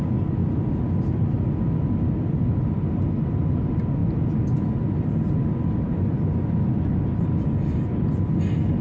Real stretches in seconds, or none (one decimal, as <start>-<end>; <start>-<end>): 0.0-8.8

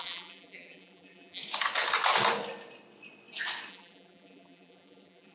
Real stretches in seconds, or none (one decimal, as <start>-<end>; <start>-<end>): 1.4-3.7

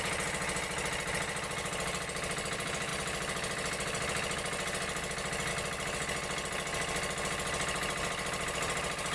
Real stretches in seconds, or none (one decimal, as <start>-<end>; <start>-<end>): 0.0-9.1

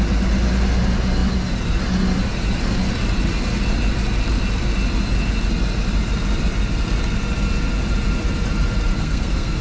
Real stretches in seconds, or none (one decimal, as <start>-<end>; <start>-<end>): 0.0-8.9